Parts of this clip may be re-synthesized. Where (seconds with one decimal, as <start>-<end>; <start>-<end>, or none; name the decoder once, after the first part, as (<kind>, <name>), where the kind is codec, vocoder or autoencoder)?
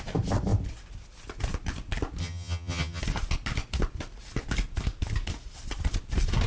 2.2-3.0 (vocoder, HiFi-GAN)